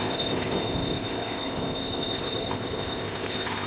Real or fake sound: fake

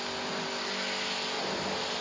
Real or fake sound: real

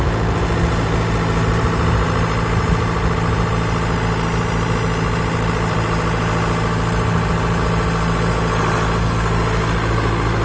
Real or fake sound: real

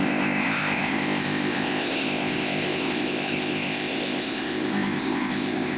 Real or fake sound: fake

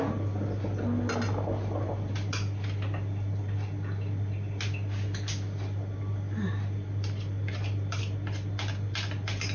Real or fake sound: real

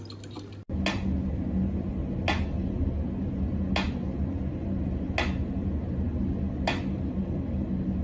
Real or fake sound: real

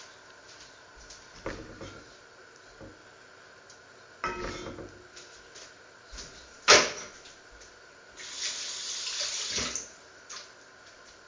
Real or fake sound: real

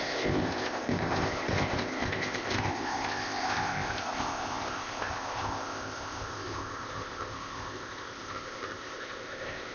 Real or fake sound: fake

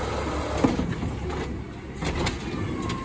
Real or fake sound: real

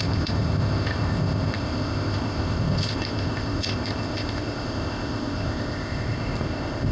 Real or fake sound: fake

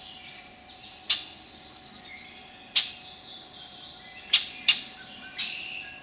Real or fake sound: real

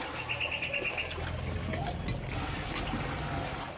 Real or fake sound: real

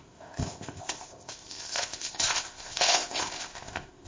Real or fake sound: fake